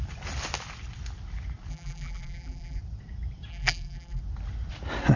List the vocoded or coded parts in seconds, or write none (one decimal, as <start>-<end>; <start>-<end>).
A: 1.7-2.8; 3.5-4.2